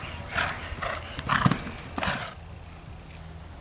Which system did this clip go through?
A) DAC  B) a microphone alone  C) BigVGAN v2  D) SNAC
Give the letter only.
B